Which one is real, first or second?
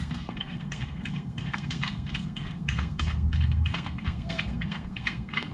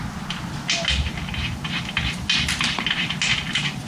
second